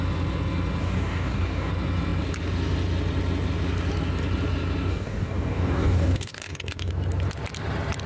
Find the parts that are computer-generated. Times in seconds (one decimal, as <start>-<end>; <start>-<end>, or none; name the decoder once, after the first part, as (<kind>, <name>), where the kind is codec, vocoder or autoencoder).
0.8-1.7 (codec, DAC); 4.9-6.9